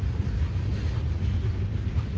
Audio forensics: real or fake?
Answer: real